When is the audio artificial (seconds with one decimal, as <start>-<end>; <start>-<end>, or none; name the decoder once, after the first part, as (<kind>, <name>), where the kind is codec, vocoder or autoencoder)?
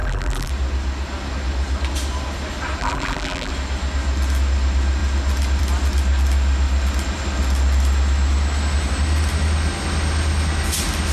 0.0-0.5 (vocoder, BigVGAN v2); 2.8-3.5